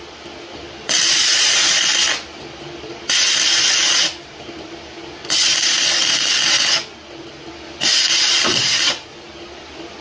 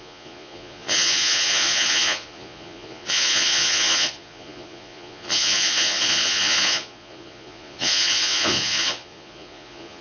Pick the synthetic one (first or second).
second